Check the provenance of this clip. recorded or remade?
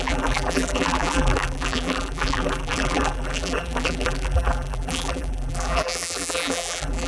remade